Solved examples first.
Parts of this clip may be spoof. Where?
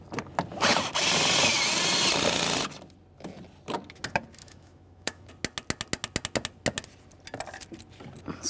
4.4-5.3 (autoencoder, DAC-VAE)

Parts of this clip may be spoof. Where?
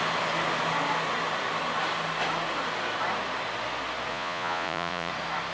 4.1-5.1 (vocoder, Vocos)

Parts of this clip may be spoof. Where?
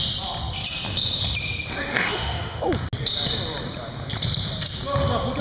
1.9-2.6 (autoencoder, DAC-VAE)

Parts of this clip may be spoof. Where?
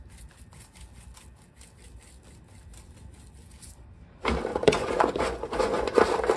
4.5-6.0 (vocoder, Vocos)